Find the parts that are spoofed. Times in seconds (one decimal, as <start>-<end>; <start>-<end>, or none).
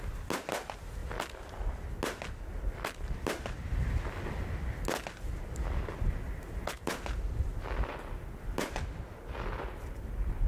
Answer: none